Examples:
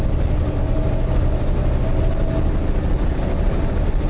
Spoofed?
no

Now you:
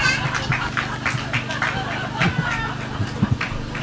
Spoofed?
no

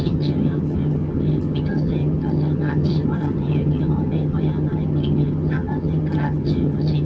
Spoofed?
yes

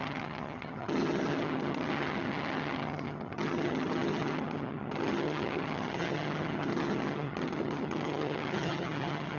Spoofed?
yes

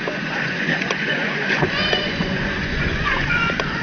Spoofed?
yes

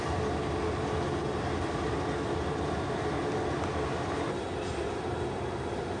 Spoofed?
no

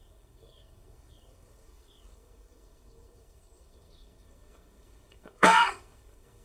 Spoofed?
yes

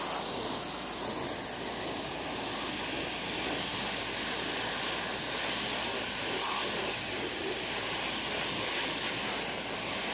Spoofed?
no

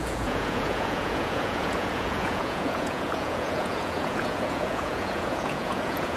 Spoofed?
yes